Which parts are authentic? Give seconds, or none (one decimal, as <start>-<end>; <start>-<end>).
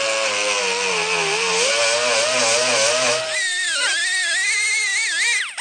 0.0-5.6